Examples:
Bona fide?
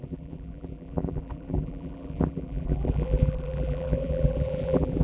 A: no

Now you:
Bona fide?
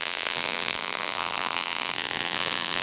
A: no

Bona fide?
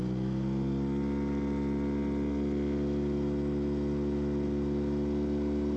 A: yes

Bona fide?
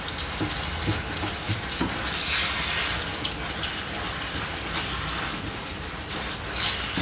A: yes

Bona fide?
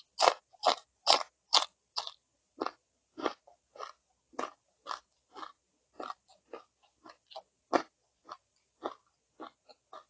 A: yes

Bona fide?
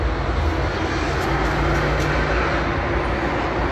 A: yes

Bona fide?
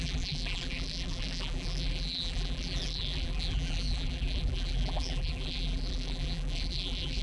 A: no